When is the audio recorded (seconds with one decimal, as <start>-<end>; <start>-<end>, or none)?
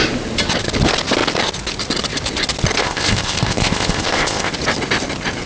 0.0-2.8; 4.5-5.5